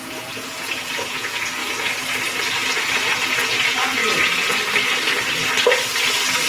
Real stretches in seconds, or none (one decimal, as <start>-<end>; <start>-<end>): 1.6-2.8; 4.0-6.5